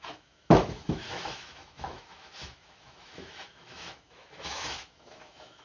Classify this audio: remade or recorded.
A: remade